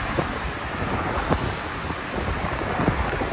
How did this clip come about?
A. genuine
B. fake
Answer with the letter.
A